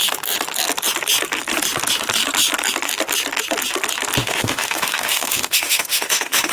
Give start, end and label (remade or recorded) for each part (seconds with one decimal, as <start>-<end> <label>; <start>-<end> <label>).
0.0-4.2 recorded; 4.2-6.5 remade

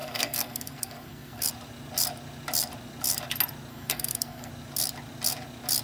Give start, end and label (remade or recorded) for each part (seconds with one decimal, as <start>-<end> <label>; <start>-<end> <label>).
0.0-1.5 remade; 1.5-3.7 recorded; 3.7-4.5 remade; 4.5-5.8 recorded